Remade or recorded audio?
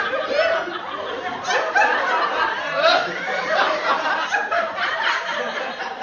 remade